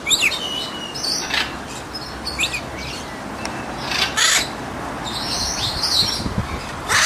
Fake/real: real